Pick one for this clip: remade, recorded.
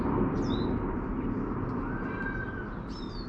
recorded